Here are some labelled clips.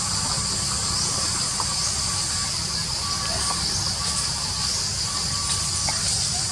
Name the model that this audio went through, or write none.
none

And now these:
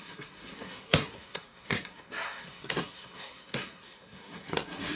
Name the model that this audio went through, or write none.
codec, SNAC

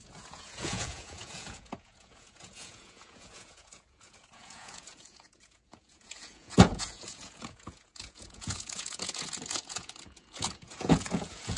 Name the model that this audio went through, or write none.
vocoder, Vocos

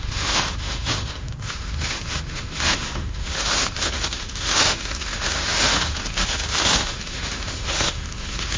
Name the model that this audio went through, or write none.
autoencoder, DAC-VAE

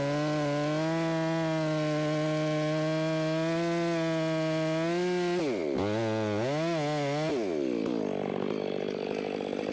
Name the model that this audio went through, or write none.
none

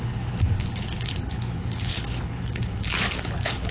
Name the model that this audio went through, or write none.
codec, HILCodec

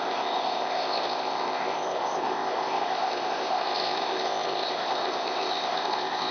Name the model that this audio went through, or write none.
codec, ZipCodec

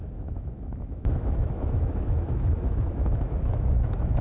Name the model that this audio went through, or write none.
autoencoder, DAC-VAE